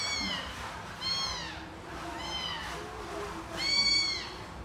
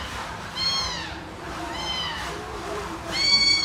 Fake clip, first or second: second